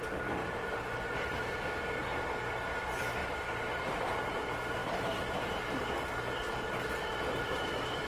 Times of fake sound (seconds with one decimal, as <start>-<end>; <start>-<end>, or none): 0.4-1.7; 3.2-4.2; 4.8-6.1